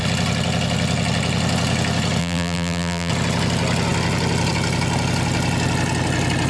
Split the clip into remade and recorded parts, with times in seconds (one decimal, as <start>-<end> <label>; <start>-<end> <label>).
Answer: 0.0-2.2 recorded; 2.2-3.1 remade; 3.1-6.5 recorded